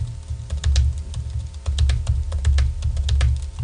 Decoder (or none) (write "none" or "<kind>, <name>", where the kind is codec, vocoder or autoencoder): none